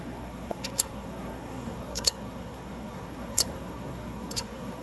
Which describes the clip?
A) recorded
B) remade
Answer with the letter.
B